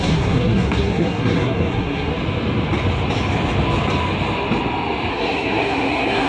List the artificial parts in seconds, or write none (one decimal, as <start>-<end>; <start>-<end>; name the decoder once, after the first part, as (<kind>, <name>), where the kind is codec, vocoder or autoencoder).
0.0-2.1 (codec, SNAC); 5.1-6.3